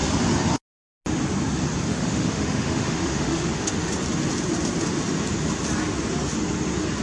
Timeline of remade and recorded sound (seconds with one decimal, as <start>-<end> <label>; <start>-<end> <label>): 0.0-1.9 recorded; 1.9-3.9 remade; 3.9-7.0 recorded